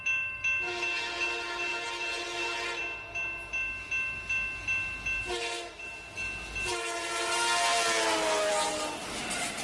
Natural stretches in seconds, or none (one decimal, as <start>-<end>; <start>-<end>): 0.0-9.6